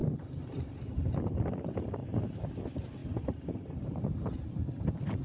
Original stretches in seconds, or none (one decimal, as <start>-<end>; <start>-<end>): 1.1-3.0; 4.3-5.2